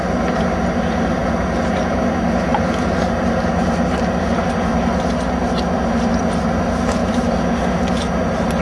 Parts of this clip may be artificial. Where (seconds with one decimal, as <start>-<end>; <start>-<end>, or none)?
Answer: none